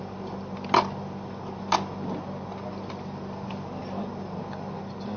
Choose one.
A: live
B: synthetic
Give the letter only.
A